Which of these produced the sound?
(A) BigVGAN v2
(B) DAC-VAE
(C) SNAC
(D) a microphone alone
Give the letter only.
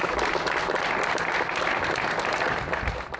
D